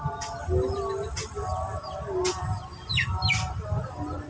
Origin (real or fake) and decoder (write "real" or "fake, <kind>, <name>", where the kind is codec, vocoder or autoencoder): real